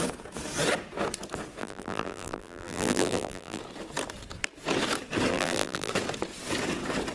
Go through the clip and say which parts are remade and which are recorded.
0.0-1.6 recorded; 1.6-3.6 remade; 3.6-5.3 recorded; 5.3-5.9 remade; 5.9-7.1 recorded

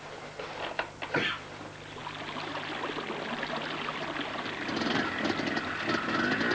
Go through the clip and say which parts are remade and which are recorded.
0.0-6.5 recorded

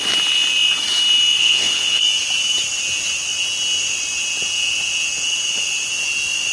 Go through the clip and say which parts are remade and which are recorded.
0.0-1.4 recorded; 1.4-2.0 remade; 2.0-6.5 recorded

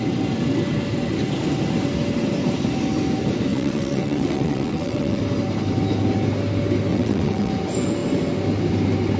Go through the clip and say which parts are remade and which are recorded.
0.0-3.5 recorded; 3.5-5.2 remade; 5.2-6.9 recorded; 6.9-7.5 remade; 7.5-9.2 recorded

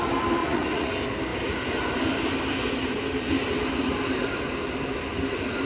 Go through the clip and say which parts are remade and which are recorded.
0.0-0.4 recorded; 0.4-0.9 remade; 0.9-5.7 recorded